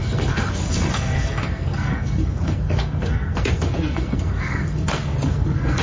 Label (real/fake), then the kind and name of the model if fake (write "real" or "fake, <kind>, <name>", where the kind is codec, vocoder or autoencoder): fake, codec, SNAC